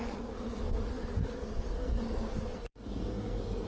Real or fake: fake